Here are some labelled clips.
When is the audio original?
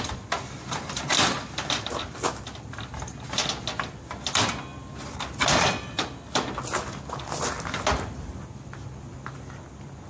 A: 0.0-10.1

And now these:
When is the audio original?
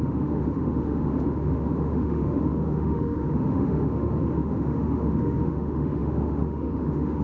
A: none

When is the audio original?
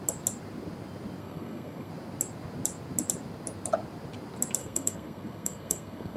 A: 0.0-1.2; 1.9-4.6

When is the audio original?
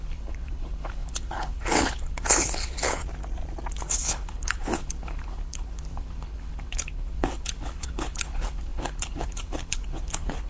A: 3.0-3.8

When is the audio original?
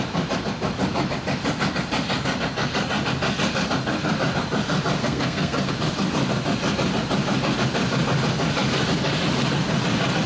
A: 0.0-5.0; 5.7-10.3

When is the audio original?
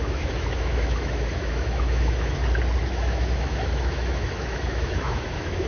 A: 2.4-2.9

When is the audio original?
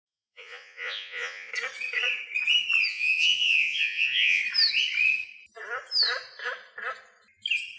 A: 1.5-2.9; 4.4-7.8